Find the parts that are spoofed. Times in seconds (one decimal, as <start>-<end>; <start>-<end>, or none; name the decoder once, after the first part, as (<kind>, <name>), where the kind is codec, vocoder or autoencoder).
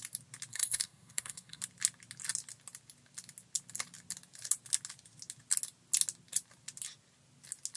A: 0.5-1.6 (codec, SNAC)